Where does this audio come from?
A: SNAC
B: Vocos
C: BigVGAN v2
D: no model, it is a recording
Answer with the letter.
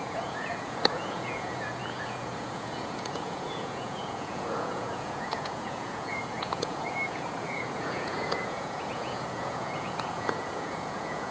B